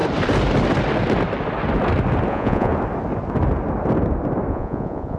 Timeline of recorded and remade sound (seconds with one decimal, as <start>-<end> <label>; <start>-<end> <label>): 0.0-2.3 recorded; 2.3-2.7 remade; 2.7-4.5 recorded; 4.5-5.2 remade